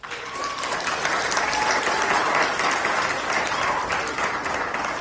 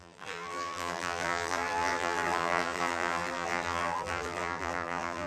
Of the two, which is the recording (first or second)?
first